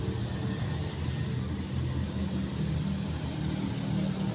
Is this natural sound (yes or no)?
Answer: yes